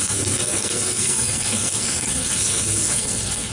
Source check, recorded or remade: remade